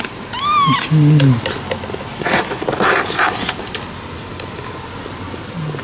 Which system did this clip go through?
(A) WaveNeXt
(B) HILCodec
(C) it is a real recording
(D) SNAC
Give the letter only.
C